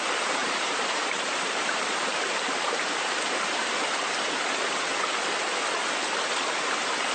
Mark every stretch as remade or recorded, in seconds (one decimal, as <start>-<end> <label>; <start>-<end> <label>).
0.0-0.4 recorded; 0.4-3.6 remade; 3.6-7.1 recorded